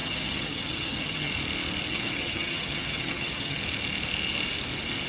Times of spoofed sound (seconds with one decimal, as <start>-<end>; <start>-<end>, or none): 0.0-1.3; 1.9-3.6